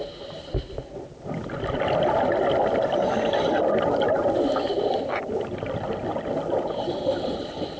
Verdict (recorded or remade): recorded